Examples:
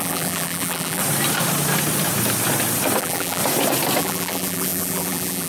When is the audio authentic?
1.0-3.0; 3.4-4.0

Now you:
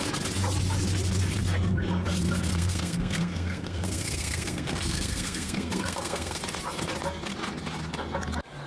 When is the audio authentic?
0.0-2.5; 6.4-8.7

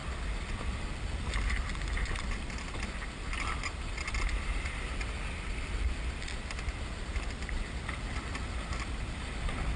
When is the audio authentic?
0.0-9.8

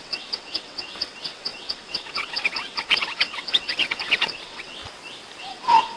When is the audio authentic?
4.8-5.4

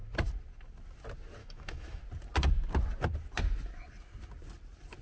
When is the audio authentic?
0.0-1.4; 2.0-5.0

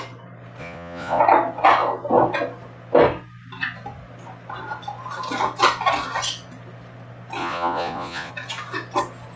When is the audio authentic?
0.0-0.6; 1.2-7.4; 8.3-9.4

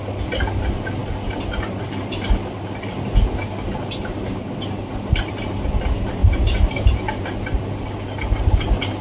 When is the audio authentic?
0.0-9.0

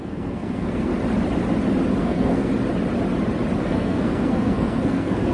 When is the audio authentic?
0.9-2.0; 2.5-3.6